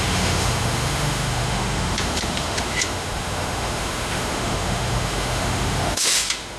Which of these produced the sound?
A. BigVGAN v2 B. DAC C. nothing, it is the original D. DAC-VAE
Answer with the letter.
D